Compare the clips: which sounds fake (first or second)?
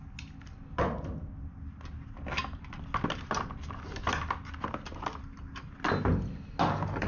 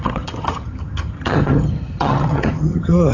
second